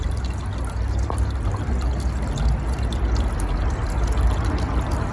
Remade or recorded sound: recorded